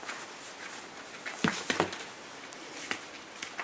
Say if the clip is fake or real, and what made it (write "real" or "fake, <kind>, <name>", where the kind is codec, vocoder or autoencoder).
real